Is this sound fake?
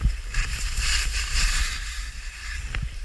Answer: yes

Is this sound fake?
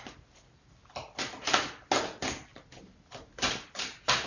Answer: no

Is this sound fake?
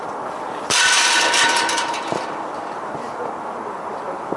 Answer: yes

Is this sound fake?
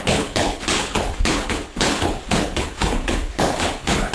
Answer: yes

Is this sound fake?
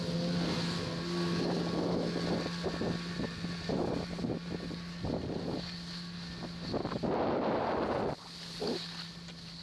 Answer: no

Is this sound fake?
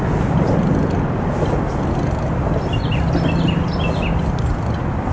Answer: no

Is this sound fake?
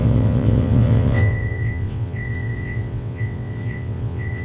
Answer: yes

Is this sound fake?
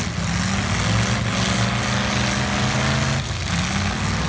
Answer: no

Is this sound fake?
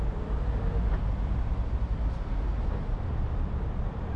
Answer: yes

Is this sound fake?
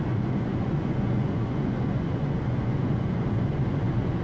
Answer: yes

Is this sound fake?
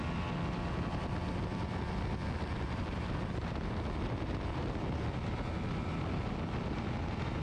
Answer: no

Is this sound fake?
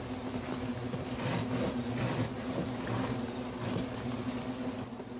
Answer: no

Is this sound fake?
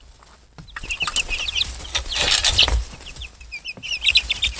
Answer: no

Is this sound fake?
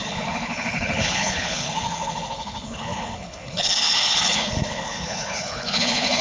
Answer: yes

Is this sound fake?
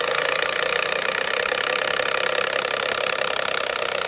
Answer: no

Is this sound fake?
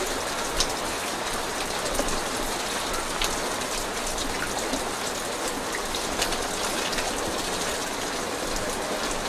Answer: no